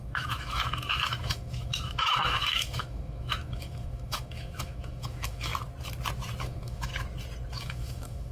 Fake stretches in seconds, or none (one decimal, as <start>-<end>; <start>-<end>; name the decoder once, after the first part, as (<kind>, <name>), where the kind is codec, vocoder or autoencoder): 0.0-5.5 (autoencoder, DAC-VAE); 6.4-6.9; 7.5-8.3